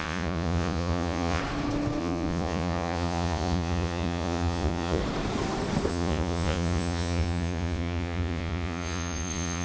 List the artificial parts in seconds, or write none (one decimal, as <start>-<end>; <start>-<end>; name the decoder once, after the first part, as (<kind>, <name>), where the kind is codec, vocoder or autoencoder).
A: 0.0-1.4 (vocoder, Vocos); 2.0-5.0; 5.9-9.6